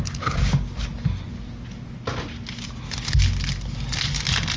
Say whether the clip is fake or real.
real